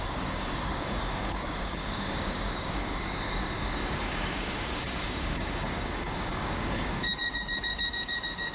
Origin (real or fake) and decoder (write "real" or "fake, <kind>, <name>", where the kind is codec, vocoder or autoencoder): fake, codec, DAC